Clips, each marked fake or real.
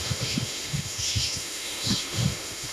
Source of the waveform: fake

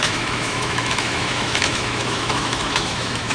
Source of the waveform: fake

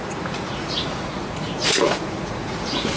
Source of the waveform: fake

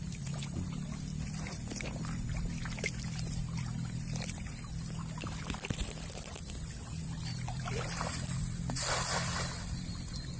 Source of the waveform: fake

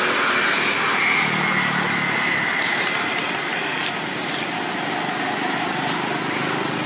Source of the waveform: real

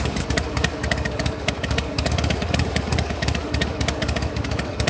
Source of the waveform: fake